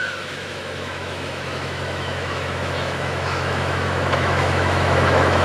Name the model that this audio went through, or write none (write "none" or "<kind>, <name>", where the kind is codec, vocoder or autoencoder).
autoencoder, DAC-VAE